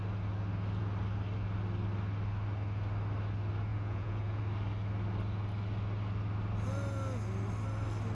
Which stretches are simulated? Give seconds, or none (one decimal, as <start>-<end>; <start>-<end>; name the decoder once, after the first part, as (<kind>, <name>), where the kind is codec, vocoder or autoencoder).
3.7-4.4 (vocoder, Vocos)